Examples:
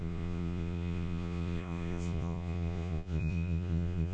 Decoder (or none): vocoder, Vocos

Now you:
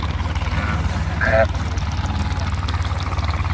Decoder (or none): none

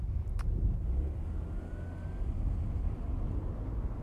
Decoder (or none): none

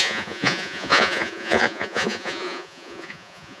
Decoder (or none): vocoder, Vocos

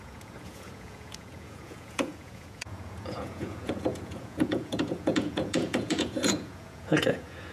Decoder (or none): vocoder, Vocos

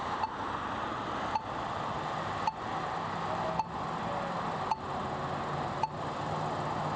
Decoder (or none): none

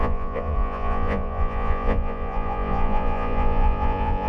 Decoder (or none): vocoder, Vocos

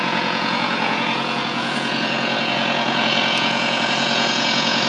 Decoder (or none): vocoder, Vocos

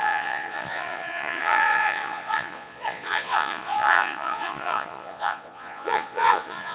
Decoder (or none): vocoder, Vocos